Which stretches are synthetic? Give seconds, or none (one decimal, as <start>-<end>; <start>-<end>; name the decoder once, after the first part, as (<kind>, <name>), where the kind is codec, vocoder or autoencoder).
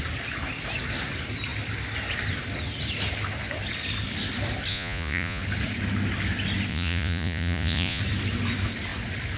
4.7-5.4 (vocoder, Vocos); 6.7-8.0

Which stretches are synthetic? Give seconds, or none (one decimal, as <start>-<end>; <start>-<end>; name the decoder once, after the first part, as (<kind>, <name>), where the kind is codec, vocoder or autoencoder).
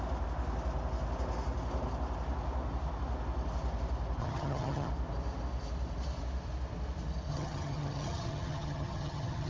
4.2-4.9 (vocoder, HiFi-GAN); 7.3-9.5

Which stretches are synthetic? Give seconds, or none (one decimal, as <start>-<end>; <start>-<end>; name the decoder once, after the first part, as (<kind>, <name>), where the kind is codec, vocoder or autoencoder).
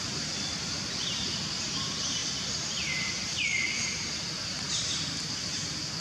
0.0-6.0 (vocoder, BigVGAN v2)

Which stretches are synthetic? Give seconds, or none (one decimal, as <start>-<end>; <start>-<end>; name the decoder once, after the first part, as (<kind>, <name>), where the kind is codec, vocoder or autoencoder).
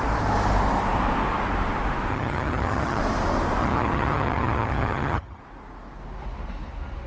2.1-3.0 (vocoder, HiFi-GAN); 3.6-5.4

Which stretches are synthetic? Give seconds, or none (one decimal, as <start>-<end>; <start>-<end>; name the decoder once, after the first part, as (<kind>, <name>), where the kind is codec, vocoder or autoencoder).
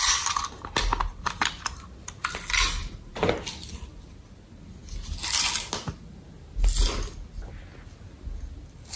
2.8-3.3 (vocoder, BigVGAN v2)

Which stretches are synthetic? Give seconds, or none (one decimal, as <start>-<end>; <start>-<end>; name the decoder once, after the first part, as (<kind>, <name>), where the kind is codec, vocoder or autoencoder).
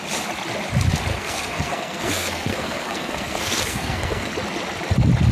1.1-4.3 (codec, SNAC)